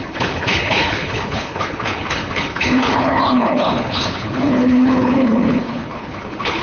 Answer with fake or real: fake